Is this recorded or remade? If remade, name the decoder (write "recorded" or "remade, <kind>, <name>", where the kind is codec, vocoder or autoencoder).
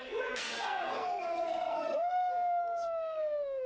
remade, codec, SNAC